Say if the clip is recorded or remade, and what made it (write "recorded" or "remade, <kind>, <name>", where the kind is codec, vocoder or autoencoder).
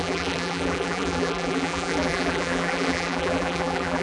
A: remade, vocoder, BigVGAN v2